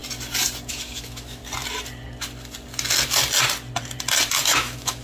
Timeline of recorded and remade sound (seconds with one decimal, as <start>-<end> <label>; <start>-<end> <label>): 0.0-0.7 recorded; 0.7-1.4 remade; 1.4-4.4 recorded; 4.4-5.0 remade